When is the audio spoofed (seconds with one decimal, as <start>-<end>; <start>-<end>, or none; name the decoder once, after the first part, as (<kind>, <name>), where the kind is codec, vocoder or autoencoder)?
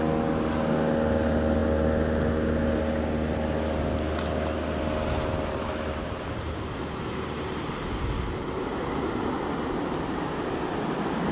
none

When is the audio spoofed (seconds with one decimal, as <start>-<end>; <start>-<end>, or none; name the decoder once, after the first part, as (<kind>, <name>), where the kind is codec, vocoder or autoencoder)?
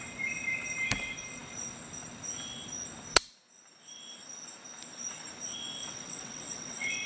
5.8-7.1 (vocoder, WaveNeXt)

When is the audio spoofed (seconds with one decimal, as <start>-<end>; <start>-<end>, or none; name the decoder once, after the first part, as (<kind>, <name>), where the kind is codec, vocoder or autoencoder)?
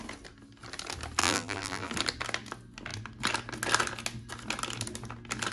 1.2-1.9 (vocoder, BigVGAN v2)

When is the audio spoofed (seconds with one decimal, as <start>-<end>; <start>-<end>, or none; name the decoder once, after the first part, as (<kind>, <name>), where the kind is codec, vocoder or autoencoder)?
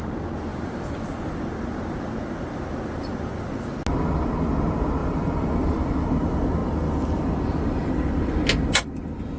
0.5-1.4 (vocoder, BigVGAN v2); 5.0-5.9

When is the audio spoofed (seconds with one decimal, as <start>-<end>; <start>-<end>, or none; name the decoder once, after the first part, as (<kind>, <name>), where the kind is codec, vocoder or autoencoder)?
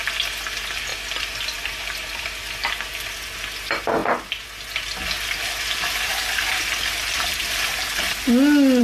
none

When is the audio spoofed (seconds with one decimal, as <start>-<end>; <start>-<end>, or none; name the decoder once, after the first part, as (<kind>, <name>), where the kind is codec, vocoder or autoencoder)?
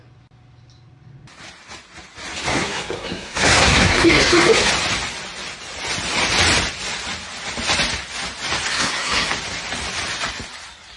2.5-4.7 (codec, SNAC); 8.7-9.3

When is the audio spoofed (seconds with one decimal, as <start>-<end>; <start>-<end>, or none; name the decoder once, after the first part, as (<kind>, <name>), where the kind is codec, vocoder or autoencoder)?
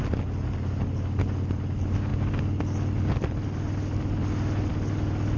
none